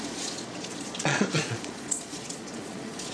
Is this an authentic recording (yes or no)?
no